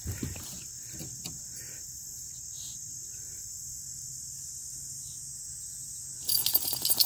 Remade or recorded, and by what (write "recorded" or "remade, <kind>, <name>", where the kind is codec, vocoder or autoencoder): recorded